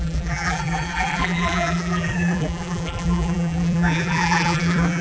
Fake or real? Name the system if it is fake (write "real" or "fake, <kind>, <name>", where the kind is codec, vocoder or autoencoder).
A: fake, vocoder, BigVGAN v2